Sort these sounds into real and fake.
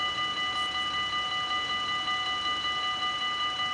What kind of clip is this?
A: real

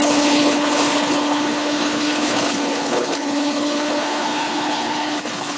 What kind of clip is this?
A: fake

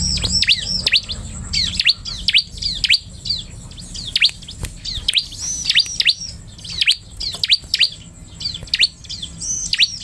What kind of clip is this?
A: real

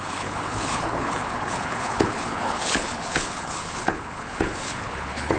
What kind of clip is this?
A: fake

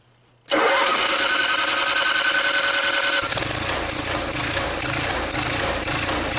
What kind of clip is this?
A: real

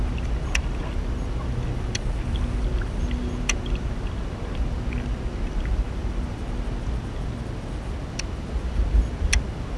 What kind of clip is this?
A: real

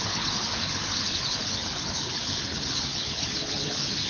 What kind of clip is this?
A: fake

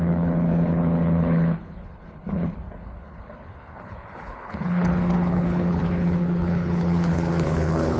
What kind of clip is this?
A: fake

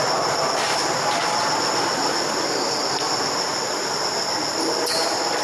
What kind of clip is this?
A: real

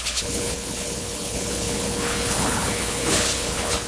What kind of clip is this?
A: fake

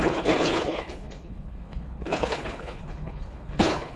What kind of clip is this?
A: fake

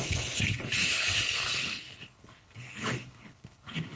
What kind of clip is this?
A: fake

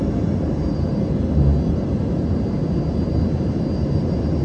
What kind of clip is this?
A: real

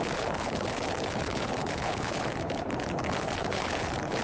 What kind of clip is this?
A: fake